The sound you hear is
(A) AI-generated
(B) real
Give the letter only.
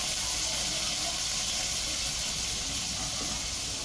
B